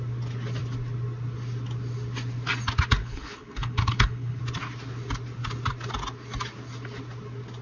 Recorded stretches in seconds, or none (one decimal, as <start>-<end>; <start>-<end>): 0.0-3.0; 4.4-7.6